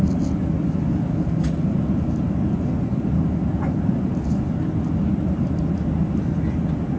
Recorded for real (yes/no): yes